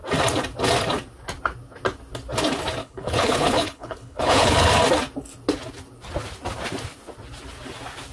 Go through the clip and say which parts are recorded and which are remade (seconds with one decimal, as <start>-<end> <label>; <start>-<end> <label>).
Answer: 0.0-2.8 recorded; 2.8-4.7 remade; 4.7-8.1 recorded